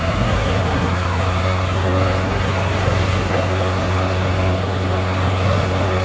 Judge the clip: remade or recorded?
remade